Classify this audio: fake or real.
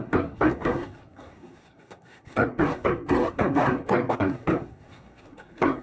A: fake